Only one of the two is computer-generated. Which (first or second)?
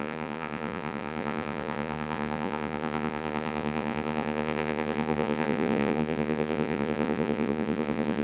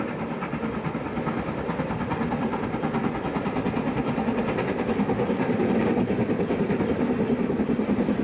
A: first